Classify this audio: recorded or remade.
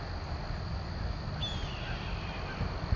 recorded